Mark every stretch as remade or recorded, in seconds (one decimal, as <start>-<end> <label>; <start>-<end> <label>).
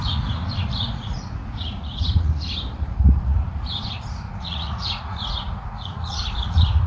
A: 0.0-6.9 remade